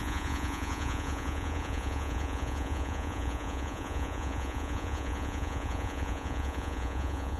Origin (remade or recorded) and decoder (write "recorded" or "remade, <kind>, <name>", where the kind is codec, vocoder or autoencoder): remade, vocoder, Vocos